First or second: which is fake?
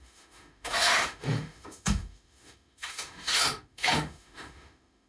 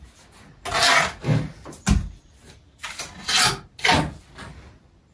first